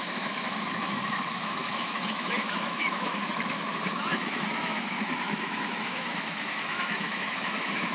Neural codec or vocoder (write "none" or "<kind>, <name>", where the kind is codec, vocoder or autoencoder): autoencoder, DAC-VAE